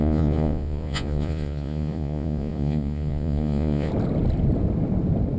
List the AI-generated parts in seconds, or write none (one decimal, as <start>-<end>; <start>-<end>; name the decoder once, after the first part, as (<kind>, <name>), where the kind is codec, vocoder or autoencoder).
0.0-3.9 (vocoder, Vocos)